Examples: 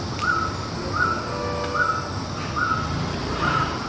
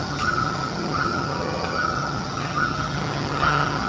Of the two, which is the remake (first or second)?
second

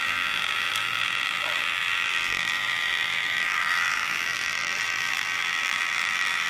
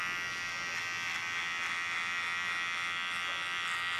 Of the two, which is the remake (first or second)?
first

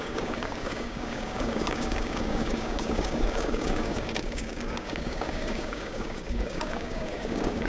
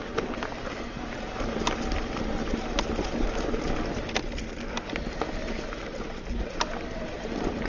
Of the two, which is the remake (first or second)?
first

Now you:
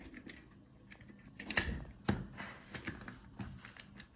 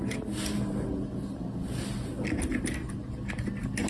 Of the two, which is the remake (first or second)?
first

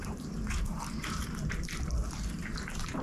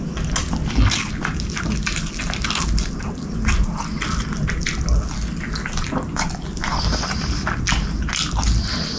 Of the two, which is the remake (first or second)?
first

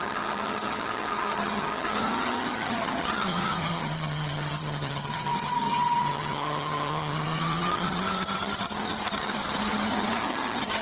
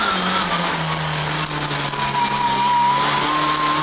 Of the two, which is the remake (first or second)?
first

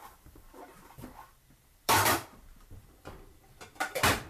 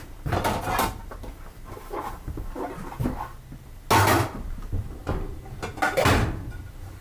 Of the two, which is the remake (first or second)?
first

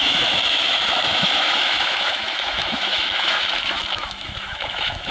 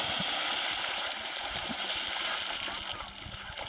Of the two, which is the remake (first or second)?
first